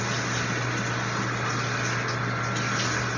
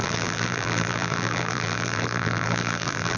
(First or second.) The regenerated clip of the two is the second